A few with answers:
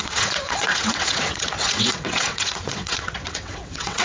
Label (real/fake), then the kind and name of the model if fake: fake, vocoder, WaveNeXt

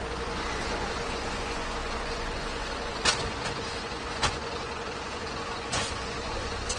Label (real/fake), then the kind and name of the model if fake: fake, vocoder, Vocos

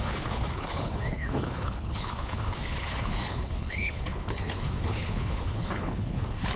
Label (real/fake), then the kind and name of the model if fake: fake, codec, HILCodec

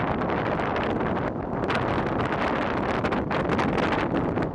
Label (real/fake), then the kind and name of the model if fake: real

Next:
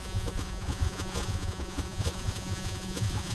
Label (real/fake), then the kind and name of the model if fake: fake, vocoder, Vocos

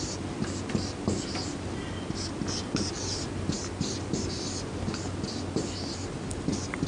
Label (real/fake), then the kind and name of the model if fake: real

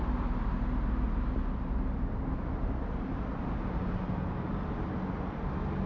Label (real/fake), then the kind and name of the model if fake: real